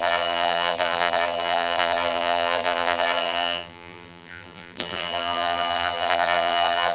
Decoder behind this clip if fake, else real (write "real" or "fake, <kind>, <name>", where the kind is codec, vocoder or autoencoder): fake, vocoder, BigVGAN v2